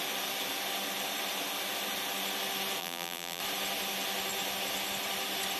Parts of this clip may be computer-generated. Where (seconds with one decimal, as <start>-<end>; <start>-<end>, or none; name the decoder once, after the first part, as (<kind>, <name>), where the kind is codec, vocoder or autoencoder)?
2.8-3.4 (vocoder, BigVGAN v2)